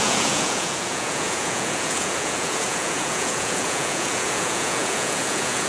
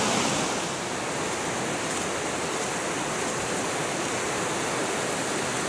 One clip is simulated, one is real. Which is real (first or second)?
second